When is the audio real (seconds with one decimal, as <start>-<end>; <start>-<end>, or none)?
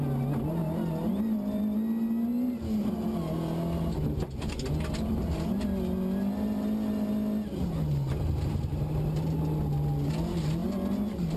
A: 0.0-11.4